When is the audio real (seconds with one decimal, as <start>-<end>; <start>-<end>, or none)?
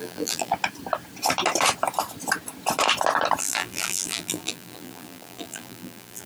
0.5-3.4